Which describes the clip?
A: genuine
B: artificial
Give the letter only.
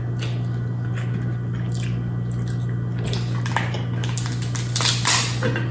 A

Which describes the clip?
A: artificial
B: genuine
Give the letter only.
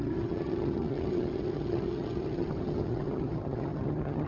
A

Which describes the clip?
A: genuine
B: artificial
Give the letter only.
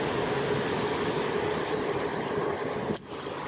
A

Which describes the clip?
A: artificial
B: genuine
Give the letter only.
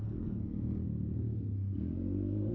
A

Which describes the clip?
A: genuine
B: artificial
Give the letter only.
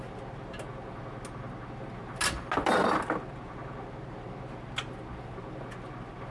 A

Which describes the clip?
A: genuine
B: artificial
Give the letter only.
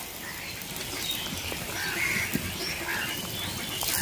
A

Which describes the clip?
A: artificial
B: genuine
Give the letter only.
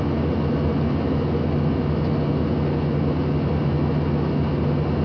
B